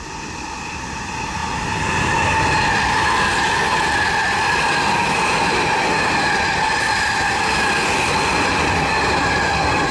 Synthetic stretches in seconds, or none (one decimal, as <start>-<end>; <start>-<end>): none